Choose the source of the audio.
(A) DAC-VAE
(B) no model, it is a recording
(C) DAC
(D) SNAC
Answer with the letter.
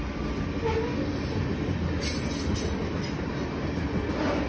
B